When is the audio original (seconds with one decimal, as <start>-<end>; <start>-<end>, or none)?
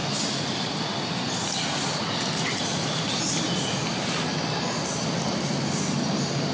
0.0-6.5